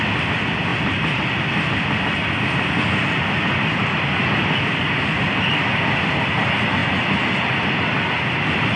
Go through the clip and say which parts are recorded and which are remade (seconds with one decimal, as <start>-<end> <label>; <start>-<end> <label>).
0.0-8.8 recorded